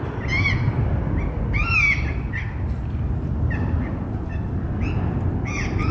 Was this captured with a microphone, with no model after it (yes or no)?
yes